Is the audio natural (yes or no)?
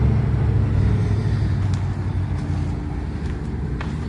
yes